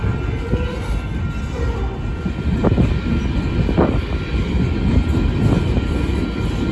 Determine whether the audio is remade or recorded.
recorded